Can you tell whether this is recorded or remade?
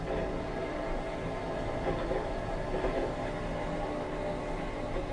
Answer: recorded